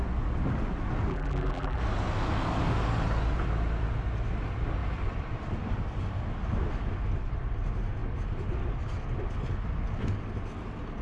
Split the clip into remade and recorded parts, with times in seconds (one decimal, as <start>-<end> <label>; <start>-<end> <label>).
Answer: 0.0-1.1 recorded; 1.1-1.8 remade; 1.8-11.0 recorded